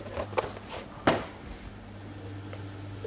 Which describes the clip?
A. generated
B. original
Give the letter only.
B